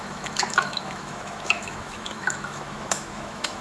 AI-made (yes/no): yes